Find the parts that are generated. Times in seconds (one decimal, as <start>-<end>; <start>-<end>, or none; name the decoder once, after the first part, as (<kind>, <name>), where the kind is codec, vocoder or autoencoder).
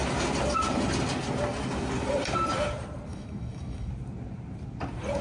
3.1-3.9 (autoencoder, DAC-VAE)